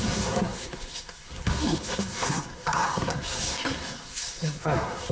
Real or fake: fake